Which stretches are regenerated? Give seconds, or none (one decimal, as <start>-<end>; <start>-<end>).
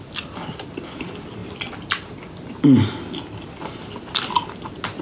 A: none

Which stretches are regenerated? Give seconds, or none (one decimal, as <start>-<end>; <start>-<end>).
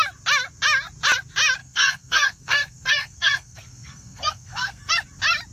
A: 1.6-4.9